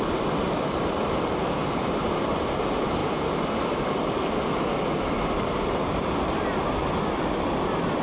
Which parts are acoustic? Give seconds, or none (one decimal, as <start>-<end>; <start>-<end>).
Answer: 0.0-1.6; 2.4-8.0